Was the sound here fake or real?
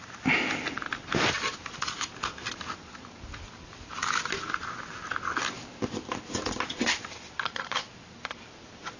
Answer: real